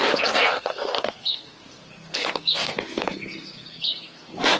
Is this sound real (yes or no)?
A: no